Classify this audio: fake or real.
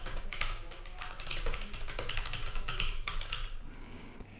fake